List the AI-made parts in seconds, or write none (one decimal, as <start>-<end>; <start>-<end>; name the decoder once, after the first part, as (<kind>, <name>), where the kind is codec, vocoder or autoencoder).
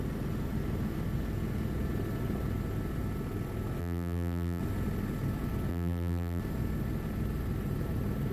3.8-4.6 (vocoder, BigVGAN v2); 5.7-6.4